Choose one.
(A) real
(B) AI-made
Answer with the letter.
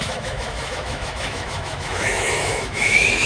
B